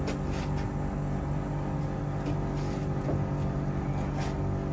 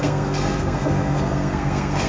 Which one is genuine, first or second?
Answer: first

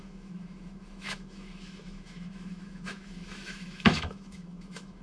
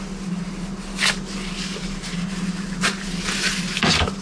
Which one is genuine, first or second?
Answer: second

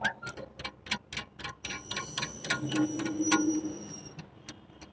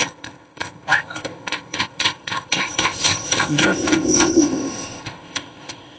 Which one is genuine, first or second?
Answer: first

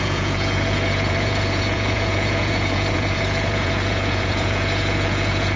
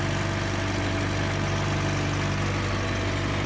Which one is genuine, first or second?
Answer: second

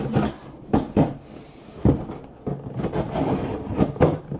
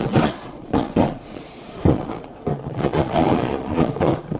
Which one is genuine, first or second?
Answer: first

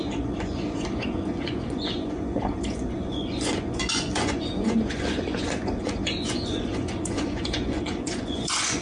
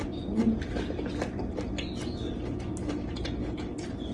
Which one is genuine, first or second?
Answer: second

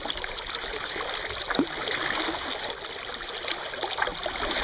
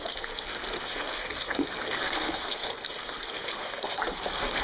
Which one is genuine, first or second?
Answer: first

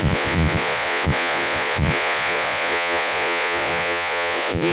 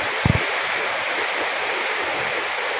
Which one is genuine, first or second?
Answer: second